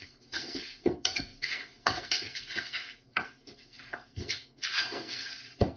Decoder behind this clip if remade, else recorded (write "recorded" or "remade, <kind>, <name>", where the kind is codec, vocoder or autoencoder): remade, codec, SNAC